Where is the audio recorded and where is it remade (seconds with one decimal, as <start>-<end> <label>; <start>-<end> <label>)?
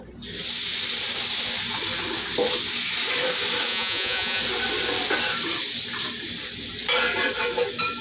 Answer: 0.0-3.7 recorded; 3.7-4.4 remade; 4.4-8.0 recorded